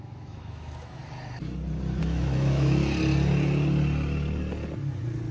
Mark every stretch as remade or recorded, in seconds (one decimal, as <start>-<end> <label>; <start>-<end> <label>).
0.0-1.0 remade; 1.0-2.0 recorded; 2.0-2.8 remade; 2.8-5.3 recorded